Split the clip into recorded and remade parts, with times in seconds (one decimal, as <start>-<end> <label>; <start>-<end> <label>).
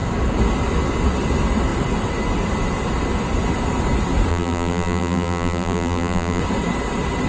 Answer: 0.0-4.3 recorded; 4.3-6.4 remade; 6.4-7.3 recorded